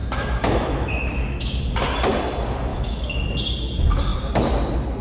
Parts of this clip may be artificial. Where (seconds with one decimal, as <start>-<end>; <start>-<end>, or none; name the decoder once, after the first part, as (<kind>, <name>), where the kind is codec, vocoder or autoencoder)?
0.0-1.6 (autoencoder, DAC-VAE); 2.7-3.2